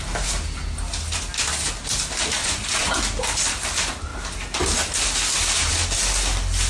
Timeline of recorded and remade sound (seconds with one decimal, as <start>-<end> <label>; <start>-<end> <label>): 0.0-2.4 recorded; 2.4-3.0 remade; 3.0-6.7 recorded